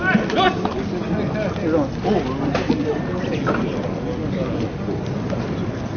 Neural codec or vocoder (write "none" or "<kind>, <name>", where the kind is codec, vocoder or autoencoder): none